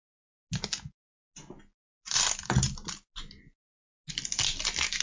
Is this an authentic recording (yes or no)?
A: yes